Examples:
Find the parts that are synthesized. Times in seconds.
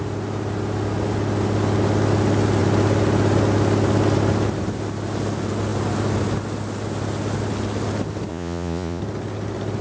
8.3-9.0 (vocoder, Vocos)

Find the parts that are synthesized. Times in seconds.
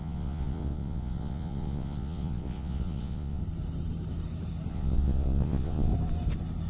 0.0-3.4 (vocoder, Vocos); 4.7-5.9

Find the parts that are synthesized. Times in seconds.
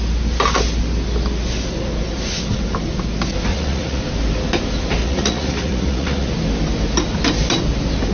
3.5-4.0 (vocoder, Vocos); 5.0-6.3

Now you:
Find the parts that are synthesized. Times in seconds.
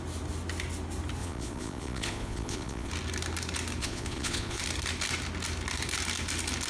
1.2-2.9 (vocoder, Vocos); 3.8-4.6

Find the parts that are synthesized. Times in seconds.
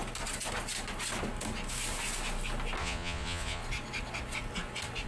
2.8-3.6 (vocoder, Vocos)